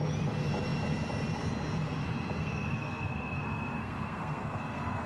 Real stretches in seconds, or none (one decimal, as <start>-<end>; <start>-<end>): 0.0-2.4

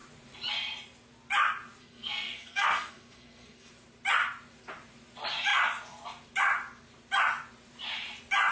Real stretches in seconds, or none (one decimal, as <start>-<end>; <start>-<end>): 0.0-1.8; 3.7-8.5

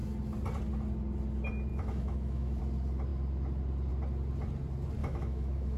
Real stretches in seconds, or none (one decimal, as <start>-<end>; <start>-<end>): 0.0-1.7; 2.6-5.0

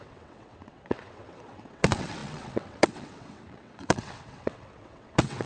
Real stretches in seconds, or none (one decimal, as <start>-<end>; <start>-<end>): none

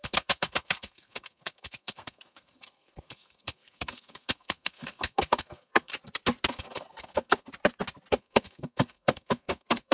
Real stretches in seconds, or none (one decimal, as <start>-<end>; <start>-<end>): 5.9-6.5; 7.5-8.1